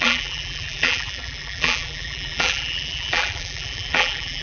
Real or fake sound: fake